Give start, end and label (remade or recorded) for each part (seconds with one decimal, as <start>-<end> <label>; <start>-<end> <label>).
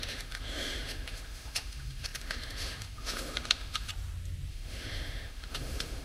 0.0-3.9 remade; 3.9-4.5 recorded; 4.5-6.0 remade